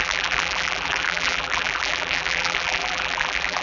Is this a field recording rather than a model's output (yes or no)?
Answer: no